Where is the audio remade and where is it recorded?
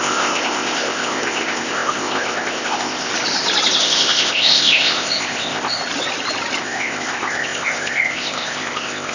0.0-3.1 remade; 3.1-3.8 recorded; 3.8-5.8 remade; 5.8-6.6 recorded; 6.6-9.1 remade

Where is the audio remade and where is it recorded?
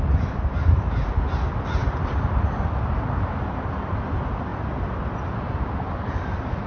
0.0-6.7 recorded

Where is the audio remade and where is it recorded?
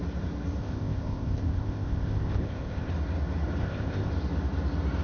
0.0-0.6 recorded; 0.6-2.9 remade; 2.9-3.6 recorded; 3.6-4.1 remade; 4.1-5.0 recorded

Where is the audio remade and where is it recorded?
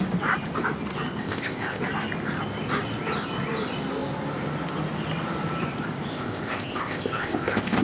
0.0-1.2 recorded; 1.2-1.8 remade; 1.8-6.1 recorded; 6.1-7.8 remade